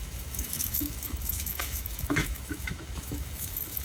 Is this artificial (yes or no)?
yes